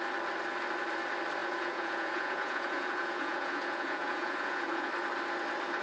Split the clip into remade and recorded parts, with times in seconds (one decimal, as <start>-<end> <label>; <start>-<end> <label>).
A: 0.0-1.4 recorded; 1.4-4.9 remade; 4.9-5.8 recorded